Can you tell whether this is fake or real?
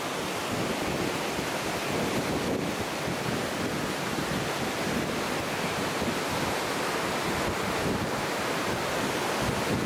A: real